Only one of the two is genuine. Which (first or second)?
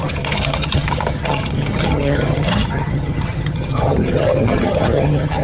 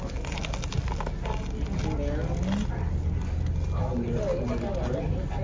second